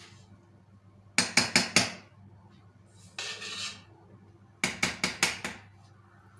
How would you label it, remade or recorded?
recorded